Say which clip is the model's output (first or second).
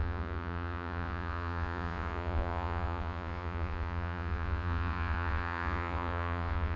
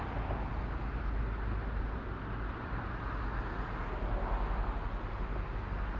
first